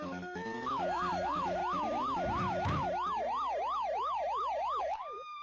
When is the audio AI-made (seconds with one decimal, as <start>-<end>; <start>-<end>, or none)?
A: 0.0-1.6; 4.8-5.4